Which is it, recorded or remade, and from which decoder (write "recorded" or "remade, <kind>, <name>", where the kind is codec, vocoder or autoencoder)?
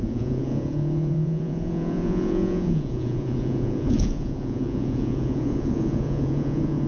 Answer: remade, vocoder, Vocos